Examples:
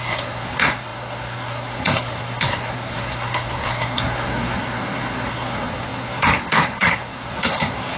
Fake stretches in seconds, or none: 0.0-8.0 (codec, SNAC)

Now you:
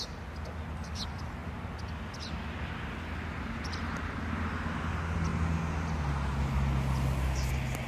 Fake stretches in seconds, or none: none

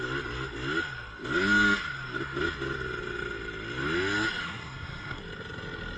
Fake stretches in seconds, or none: 4.4-5.2 (codec, SNAC)

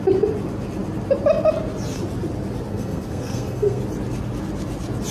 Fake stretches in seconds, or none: 2.7-3.8 (codec, SNAC)

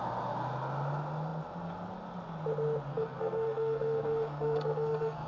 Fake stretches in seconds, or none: 2.9-5.3 (codec, SNAC)

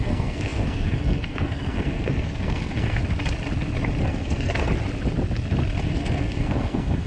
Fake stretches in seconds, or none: 0.0-3.0 (codec, SNAC); 4.0-4.7; 5.8-7.1

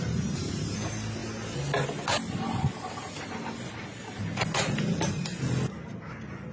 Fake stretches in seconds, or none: none

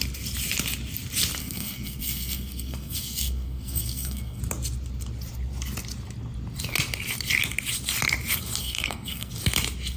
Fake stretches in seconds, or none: 1.4-4.4 (codec, SNAC); 8.6-9.3